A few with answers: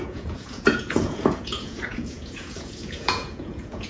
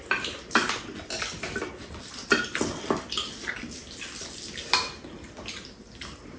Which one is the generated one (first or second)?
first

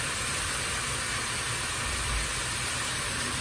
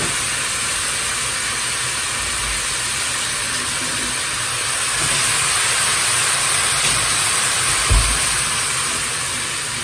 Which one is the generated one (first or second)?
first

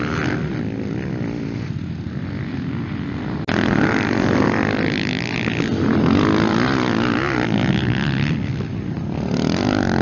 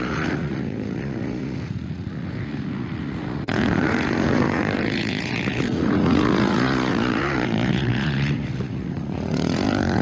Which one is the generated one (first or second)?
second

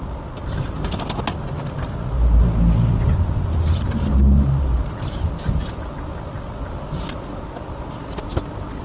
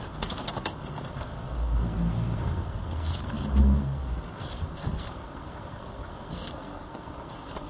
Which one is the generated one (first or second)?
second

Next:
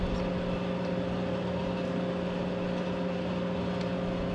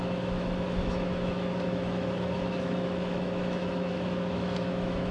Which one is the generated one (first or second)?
second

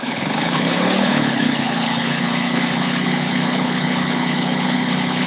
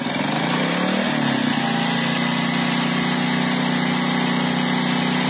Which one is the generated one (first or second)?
first